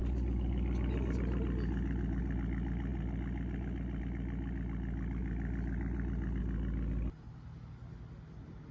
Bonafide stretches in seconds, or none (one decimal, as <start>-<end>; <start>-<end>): 2.2-5.2; 6.4-8.7